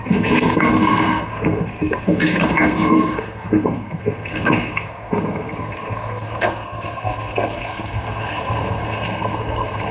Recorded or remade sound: remade